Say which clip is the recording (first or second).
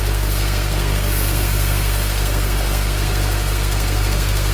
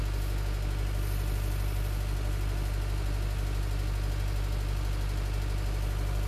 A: second